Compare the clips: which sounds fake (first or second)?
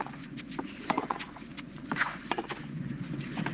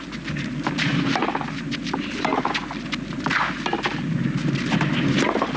first